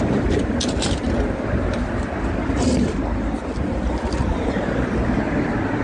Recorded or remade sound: recorded